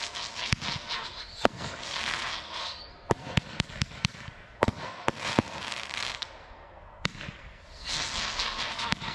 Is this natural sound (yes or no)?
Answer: no